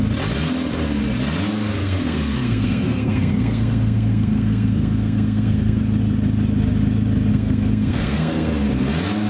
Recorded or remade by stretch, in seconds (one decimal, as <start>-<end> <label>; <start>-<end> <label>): 0.0-1.8 recorded; 1.8-5.8 remade; 5.8-7.3 recorded; 7.3-8.5 remade; 8.5-9.3 recorded